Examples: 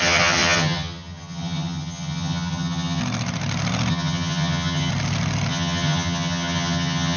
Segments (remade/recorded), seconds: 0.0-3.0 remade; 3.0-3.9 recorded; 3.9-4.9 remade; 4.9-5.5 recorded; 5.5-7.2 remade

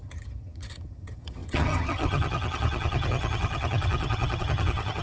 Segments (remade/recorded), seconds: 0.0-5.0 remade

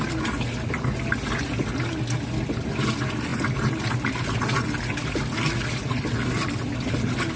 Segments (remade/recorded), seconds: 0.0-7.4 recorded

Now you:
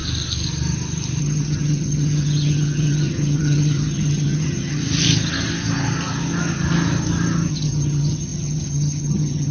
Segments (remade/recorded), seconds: 0.0-1.2 recorded; 1.2-4.8 remade; 4.8-7.5 recorded; 7.5-9.5 remade

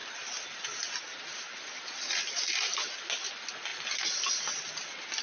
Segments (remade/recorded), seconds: 0.0-5.2 recorded